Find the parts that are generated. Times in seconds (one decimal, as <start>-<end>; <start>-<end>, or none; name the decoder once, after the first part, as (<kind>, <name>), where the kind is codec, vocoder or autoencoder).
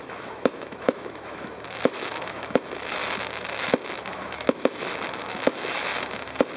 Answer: 0.0-3.0 (autoencoder, DAC-VAE); 3.9-5.9